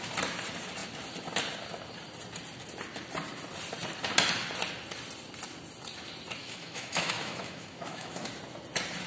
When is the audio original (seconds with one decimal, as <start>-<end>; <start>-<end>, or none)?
0.0-6.4; 8.3-9.1